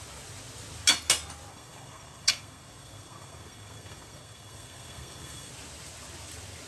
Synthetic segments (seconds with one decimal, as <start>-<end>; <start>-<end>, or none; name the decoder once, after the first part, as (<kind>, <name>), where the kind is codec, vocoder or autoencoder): 1.5-5.5 (codec, SNAC)